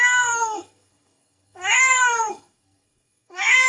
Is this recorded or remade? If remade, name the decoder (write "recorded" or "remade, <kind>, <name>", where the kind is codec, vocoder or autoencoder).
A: remade, codec, SNAC